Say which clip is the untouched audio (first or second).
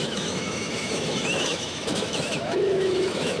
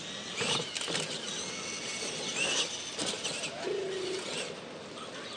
second